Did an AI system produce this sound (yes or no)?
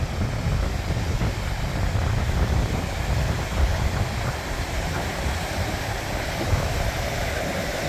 no